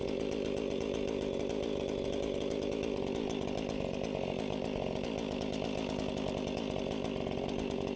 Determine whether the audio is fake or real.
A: real